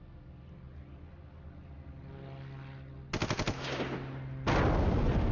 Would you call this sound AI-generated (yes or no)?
no